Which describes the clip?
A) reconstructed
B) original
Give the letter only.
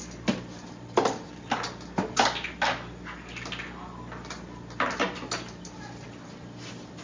B